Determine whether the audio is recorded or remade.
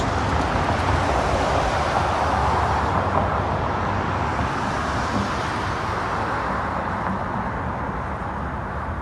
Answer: recorded